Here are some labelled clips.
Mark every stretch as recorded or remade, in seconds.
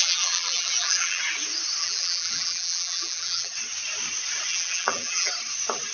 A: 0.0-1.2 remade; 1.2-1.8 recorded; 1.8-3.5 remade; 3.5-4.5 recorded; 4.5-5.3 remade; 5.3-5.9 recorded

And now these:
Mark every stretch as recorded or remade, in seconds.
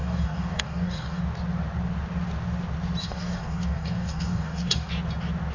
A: 0.0-1.2 remade; 1.2-3.0 recorded; 3.0-4.9 remade; 4.9-5.5 recorded